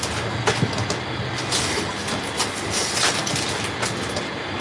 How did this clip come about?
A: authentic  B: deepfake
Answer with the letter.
A